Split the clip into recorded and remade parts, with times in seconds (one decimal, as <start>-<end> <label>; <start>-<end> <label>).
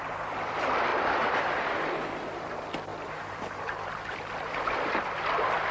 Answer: 0.0-2.9 recorded; 2.9-3.4 remade; 3.4-5.7 recorded